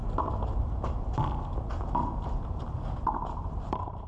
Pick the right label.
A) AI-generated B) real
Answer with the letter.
B